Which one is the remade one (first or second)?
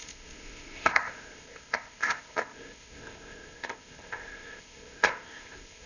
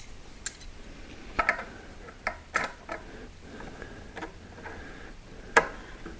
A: first